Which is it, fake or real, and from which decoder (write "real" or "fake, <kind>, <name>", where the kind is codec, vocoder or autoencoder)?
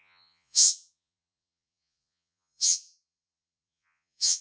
fake, vocoder, Vocos